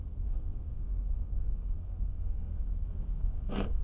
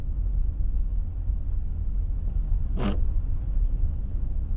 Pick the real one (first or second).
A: second